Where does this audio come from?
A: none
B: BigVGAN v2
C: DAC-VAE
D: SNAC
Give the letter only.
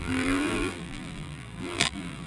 B